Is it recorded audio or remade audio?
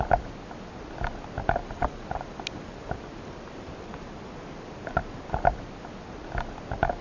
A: recorded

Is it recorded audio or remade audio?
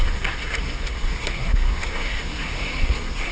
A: remade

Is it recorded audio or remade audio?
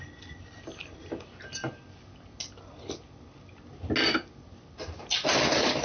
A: recorded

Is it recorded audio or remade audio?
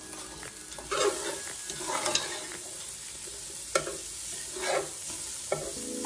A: recorded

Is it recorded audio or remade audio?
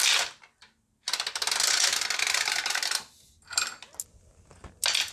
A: recorded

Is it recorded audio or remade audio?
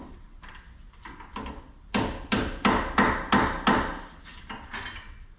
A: recorded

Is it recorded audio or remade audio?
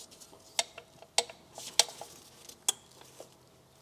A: recorded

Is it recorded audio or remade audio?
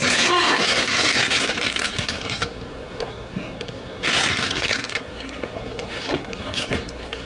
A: remade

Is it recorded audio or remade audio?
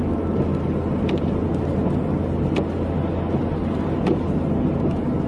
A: recorded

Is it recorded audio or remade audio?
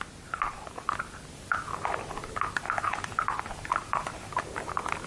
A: recorded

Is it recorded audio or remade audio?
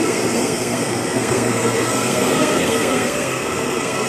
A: remade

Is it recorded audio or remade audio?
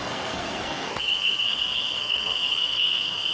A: remade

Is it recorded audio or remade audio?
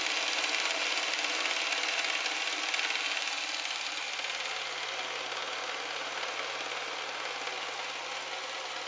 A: recorded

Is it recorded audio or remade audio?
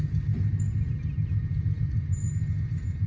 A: recorded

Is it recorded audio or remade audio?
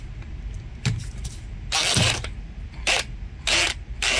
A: recorded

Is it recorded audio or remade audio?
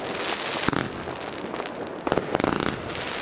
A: recorded